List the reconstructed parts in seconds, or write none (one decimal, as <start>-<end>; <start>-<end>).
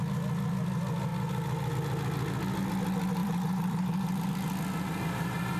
3.2-4.3